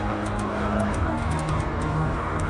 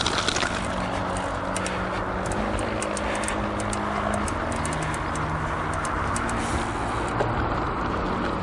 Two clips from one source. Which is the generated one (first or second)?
first